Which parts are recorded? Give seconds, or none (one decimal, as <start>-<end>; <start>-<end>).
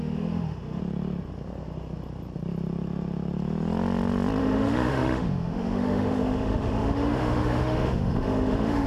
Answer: 0.8-4.4